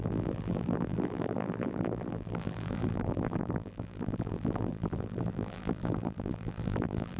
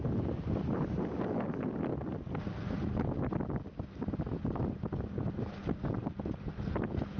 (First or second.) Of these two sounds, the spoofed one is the first